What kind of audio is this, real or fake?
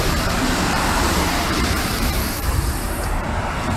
fake